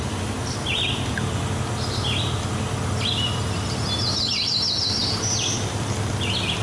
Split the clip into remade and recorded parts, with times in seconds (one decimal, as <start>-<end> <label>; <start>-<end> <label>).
0.0-6.6 recorded